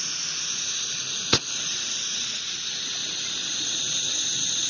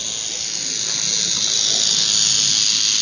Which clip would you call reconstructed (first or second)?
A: first